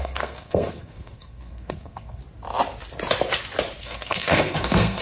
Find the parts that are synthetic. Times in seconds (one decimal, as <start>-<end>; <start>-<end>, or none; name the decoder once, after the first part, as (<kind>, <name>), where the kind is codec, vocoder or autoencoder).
0.0-2.2 (codec, SNAC); 3.8-5.0